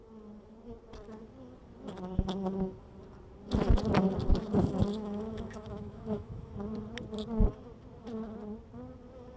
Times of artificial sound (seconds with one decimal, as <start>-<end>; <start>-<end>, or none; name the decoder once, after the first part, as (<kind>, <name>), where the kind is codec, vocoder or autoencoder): 4.9-6.5 (autoencoder, DAC-VAE)